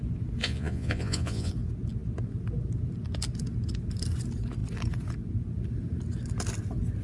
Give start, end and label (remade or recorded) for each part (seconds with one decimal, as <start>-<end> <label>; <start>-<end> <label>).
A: 0.0-0.4 recorded; 0.4-1.5 remade; 1.5-7.0 recorded